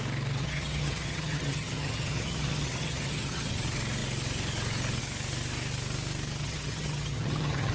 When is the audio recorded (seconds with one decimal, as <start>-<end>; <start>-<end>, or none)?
0.0-0.4; 3.5-6.4

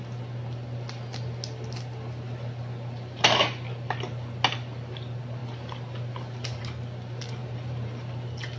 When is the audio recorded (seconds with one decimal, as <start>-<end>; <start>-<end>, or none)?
0.0-7.4; 8.1-8.6